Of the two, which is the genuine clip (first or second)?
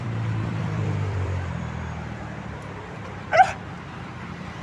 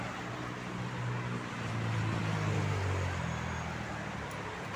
second